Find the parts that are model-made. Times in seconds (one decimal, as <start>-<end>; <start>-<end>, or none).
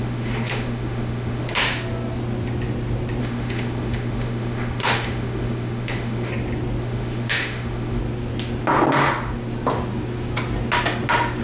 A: 0.0-1.6; 3.2-6.3; 6.8-8.0